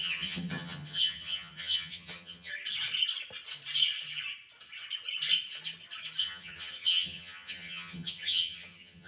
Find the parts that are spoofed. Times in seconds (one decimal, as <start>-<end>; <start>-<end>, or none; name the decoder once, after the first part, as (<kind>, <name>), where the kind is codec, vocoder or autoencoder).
0.0-2.5 (vocoder, HiFi-GAN); 6.2-9.1